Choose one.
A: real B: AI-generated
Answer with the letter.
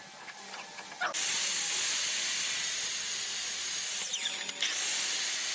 A